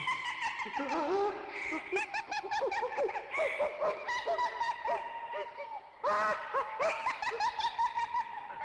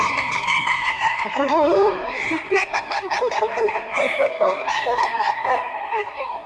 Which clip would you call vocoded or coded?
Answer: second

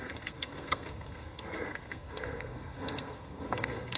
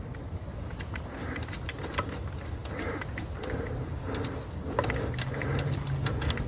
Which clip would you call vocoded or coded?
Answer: first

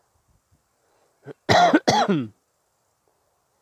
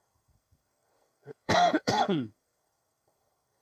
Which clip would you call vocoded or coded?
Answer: second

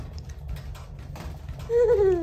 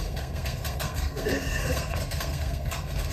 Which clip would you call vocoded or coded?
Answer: second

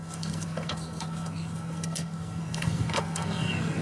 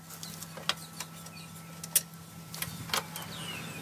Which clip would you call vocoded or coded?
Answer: first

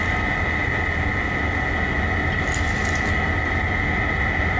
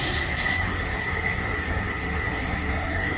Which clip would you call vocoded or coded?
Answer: second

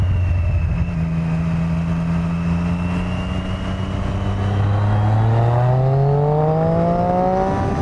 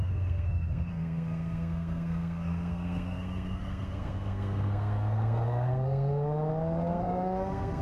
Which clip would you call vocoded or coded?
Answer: second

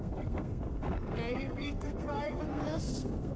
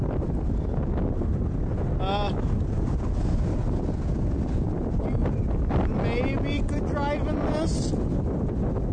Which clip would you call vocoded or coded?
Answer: first